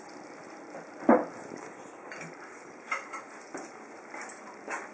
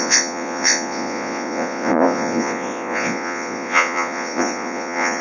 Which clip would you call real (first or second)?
first